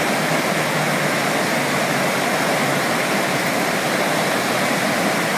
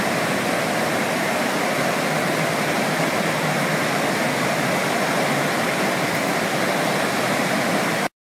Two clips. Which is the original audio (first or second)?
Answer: first